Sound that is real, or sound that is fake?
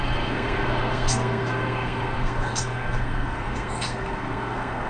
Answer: fake